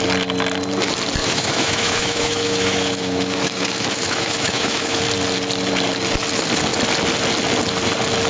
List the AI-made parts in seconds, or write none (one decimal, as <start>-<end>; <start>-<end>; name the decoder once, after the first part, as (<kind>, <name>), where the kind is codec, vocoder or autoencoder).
1.2-5.0 (autoencoder, DAC-VAE)